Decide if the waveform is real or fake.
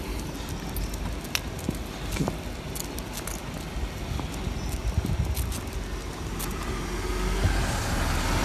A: real